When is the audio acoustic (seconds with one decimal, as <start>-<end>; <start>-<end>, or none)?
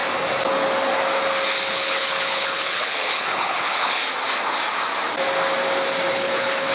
0.0-1.7; 4.0-6.1